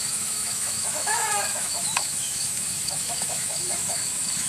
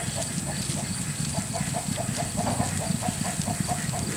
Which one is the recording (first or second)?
second